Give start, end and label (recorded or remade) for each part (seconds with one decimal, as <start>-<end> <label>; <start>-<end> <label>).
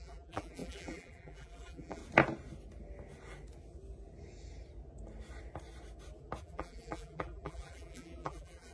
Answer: 0.0-2.0 remade; 2.0-6.4 recorded; 6.4-8.7 remade